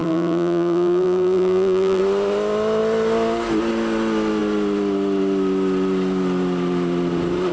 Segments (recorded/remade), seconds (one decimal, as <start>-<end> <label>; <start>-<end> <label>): 0.0-2.0 remade; 2.0-7.5 recorded